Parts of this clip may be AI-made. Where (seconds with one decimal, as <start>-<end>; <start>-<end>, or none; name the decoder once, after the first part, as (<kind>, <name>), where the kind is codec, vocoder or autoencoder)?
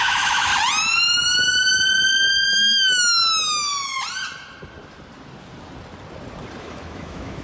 0.0-0.5 (autoencoder, DAC-VAE); 2.5-3.2; 6.6-7.4